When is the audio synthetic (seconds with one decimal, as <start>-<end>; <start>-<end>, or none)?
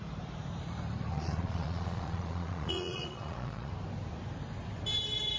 1.1-3.7